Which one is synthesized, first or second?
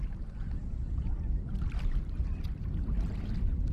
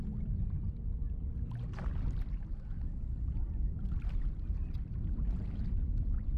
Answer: first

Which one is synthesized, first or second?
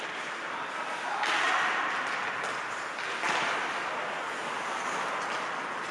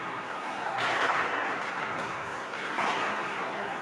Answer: second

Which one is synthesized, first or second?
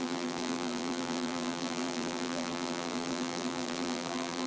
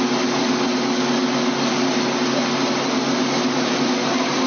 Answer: first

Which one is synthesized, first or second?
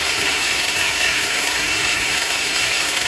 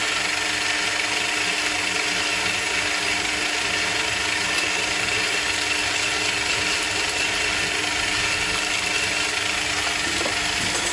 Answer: first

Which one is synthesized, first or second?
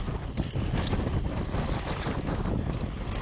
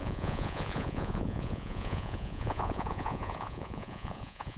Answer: second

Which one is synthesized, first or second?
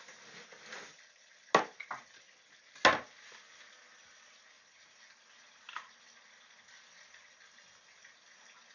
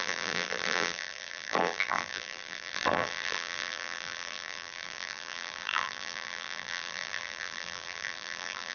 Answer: second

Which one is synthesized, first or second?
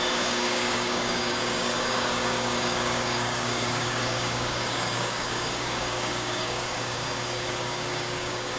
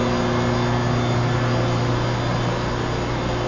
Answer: first